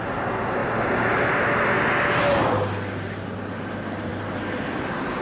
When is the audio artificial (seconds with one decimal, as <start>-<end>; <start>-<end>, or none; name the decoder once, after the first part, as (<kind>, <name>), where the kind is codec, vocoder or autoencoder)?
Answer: none